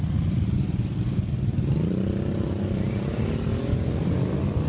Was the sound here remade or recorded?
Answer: recorded